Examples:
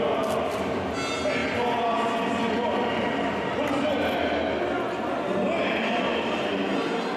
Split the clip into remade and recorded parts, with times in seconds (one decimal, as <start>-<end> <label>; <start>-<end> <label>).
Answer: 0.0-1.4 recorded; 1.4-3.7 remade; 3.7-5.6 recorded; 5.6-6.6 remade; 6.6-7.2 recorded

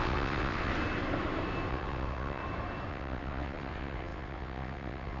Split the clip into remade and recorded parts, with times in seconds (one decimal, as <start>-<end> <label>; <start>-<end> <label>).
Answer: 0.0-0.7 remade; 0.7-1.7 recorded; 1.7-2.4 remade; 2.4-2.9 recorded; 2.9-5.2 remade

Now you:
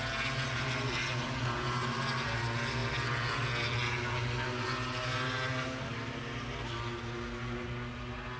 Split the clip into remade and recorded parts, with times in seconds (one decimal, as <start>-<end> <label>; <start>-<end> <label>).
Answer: 0.0-8.4 recorded

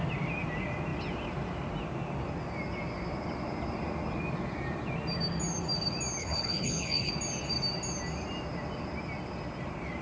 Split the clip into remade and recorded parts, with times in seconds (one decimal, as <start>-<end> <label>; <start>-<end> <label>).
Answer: 0.0-6.2 recorded; 6.2-7.1 remade; 7.1-10.0 recorded

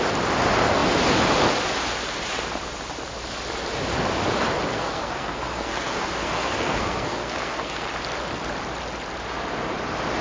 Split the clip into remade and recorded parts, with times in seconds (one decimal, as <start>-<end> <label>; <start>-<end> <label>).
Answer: 0.0-4.7 recorded; 4.7-7.9 remade; 7.9-10.2 recorded